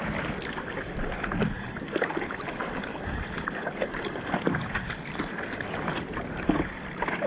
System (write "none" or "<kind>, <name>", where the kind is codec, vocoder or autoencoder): vocoder, BigVGAN v2